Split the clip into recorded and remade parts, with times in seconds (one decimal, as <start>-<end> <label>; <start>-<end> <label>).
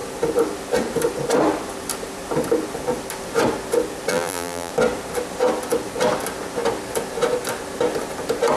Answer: 0.0-4.1 recorded; 4.1-4.7 remade; 4.7-8.6 recorded